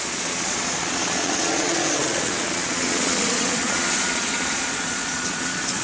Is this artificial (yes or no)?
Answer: yes